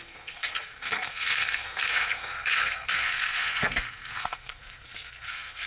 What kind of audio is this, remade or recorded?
remade